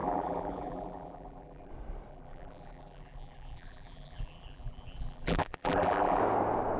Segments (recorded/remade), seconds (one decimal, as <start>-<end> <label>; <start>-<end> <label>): 0.0-1.7 remade; 1.7-2.1 recorded; 2.1-6.2 remade; 6.2-6.8 recorded